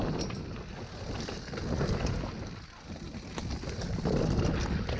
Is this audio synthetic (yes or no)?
no